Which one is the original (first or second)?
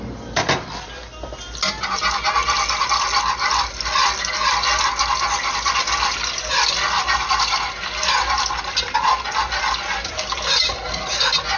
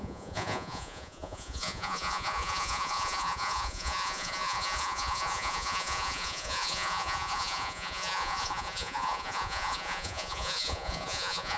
first